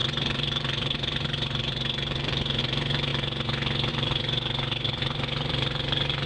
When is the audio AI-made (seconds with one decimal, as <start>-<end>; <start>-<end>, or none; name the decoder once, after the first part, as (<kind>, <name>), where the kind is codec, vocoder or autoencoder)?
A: 0.0-3.1 (vocoder, BigVGAN v2); 3.9-6.3